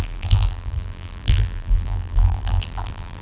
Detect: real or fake fake